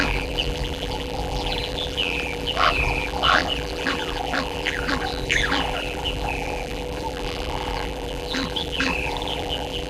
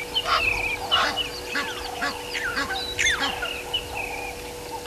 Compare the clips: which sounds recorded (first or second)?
second